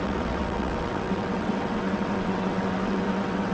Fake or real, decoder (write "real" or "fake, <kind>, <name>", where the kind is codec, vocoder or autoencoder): fake, vocoder, WaveNeXt